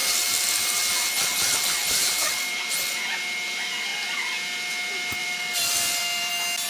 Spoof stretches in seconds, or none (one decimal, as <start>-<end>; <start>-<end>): 0.0-0.5; 1.8-2.9; 5.2-6.3